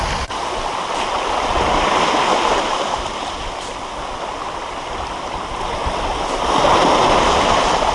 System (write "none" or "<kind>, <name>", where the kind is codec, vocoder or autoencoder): none